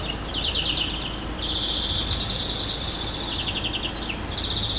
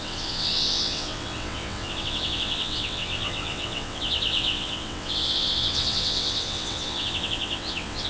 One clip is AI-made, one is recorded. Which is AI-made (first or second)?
second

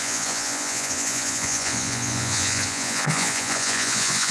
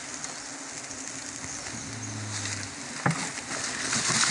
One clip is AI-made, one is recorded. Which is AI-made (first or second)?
first